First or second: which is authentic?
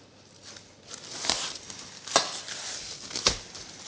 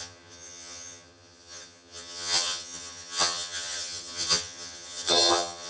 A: first